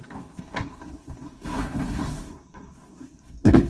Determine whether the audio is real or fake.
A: fake